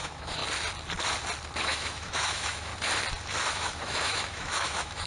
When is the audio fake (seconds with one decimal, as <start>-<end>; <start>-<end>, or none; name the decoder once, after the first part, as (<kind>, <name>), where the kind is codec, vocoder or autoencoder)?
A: 0.0-0.4 (autoencoder, DAC-VAE); 1.6-2.7; 3.5-5.1